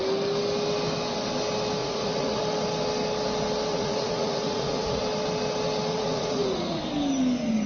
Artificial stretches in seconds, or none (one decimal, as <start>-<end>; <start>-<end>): 1.8-2.4; 3.7-5.0; 5.9-6.8